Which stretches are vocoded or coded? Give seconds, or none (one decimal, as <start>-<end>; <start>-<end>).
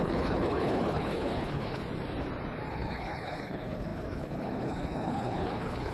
0.0-1.8; 2.7-5.9